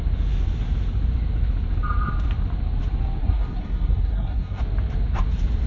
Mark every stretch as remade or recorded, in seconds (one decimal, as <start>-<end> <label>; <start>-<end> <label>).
0.0-3.2 recorded; 3.2-4.6 remade; 4.6-5.7 recorded